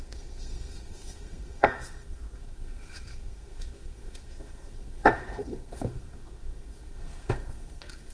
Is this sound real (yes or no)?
no